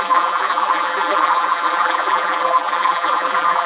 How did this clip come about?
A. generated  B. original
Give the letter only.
A